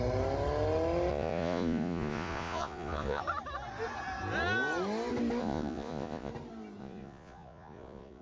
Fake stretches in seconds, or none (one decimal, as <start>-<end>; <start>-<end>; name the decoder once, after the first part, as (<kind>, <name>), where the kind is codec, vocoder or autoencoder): 1.1-3.2 (vocoder, Vocos); 5.4-6.3; 6.8-8.2